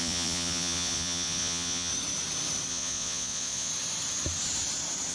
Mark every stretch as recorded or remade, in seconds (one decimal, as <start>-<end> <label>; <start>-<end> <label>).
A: 0.0-1.9 remade; 1.9-2.7 recorded; 2.7-3.7 remade; 3.7-5.1 recorded

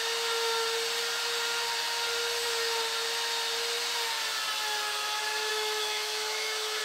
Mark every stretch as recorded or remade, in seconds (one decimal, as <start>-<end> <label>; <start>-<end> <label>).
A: 0.0-5.5 recorded; 5.5-6.8 remade

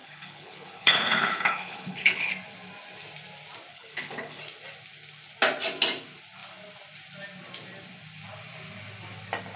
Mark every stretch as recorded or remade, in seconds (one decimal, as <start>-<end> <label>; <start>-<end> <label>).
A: 0.0-2.3 remade; 2.3-3.7 recorded; 3.7-4.4 remade; 4.4-9.6 recorded